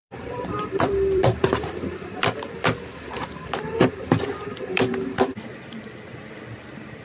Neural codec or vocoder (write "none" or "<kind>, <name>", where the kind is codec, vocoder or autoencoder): vocoder, BigVGAN v2